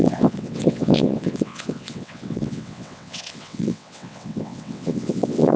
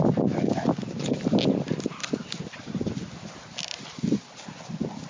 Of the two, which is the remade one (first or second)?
first